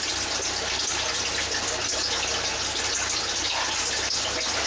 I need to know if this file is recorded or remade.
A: recorded